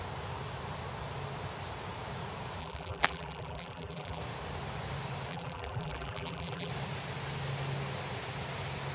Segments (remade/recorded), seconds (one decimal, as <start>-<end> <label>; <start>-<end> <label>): 0.0-2.6 recorded; 2.6-4.2 remade; 4.2-5.3 recorded; 5.3-6.7 remade; 6.7-8.9 recorded